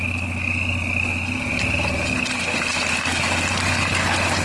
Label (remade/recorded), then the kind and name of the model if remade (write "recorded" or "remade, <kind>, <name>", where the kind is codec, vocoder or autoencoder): recorded